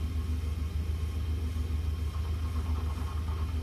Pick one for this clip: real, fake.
real